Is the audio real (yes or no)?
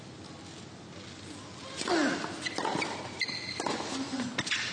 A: yes